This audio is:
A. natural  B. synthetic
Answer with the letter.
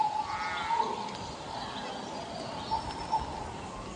A